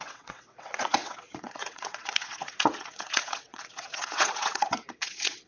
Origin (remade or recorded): remade